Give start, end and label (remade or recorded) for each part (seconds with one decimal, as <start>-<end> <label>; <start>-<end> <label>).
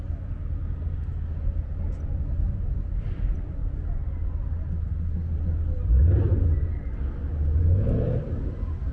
0.0-8.9 recorded